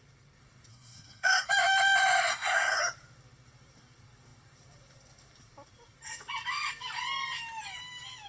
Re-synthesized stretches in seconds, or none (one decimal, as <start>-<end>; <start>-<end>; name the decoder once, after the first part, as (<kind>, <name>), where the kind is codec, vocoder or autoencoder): 0.7-1.5 (codec, SNAC); 2.3-2.8